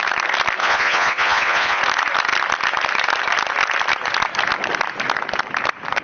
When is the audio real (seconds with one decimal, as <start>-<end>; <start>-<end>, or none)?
0.0-0.6; 1.8-6.0

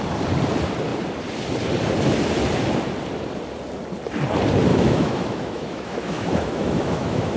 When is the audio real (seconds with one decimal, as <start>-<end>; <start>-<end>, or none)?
0.0-4.7

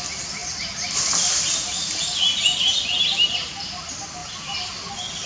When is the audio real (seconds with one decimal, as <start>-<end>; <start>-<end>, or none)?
0.0-5.3

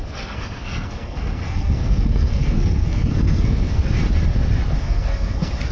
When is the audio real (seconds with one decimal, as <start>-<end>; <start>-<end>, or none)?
4.0-4.8

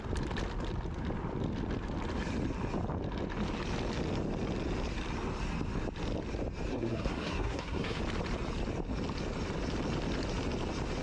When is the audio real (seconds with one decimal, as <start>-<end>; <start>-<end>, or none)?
0.0-6.7; 8.0-11.0

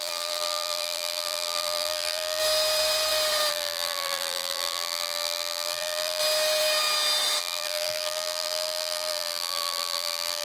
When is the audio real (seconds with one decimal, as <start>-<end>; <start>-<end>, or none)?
2.4-3.5; 6.2-7.4